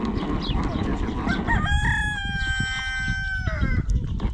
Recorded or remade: recorded